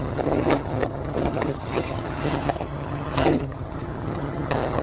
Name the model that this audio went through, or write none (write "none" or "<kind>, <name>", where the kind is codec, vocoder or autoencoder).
vocoder, HiFi-GAN